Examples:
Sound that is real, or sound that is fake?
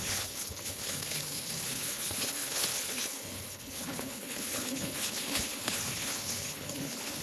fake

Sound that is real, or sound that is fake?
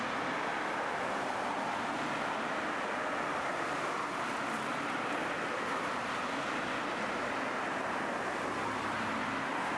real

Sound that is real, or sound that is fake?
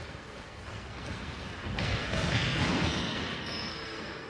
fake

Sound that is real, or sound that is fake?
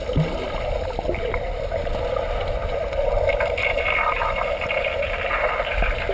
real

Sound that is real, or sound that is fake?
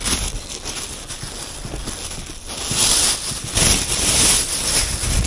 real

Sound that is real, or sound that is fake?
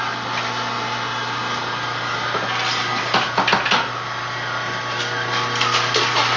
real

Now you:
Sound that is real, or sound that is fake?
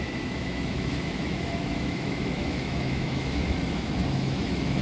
fake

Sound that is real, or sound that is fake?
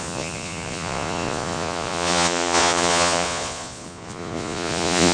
fake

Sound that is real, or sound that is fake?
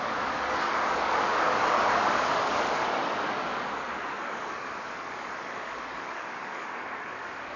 fake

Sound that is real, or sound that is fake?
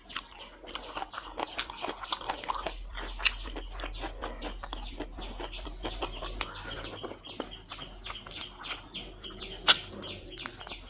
real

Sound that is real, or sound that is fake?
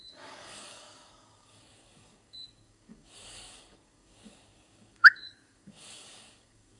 fake